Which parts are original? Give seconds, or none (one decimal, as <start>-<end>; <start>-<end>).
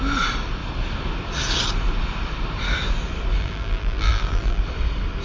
0.0-3.4; 4.6-5.2